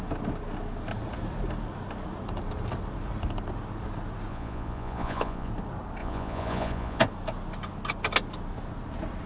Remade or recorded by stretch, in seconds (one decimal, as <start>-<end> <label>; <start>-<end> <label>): 0.0-4.3 recorded; 4.3-5.5 remade; 5.5-6.0 recorded; 6.0-7.0 remade; 7.0-9.3 recorded